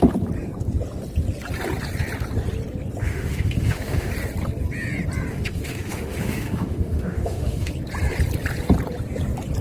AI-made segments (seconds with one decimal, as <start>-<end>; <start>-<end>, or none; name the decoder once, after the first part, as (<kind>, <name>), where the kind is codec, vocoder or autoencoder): 3.0-4.1 (autoencoder, DAC-VAE); 5.3-7.7